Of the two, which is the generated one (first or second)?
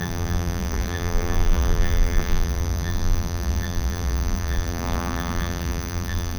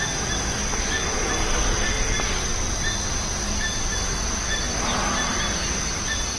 first